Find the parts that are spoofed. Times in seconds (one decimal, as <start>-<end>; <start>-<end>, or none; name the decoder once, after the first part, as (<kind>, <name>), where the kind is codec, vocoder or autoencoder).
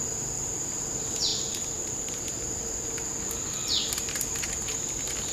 none